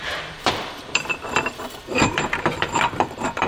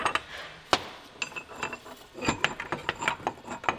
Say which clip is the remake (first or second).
first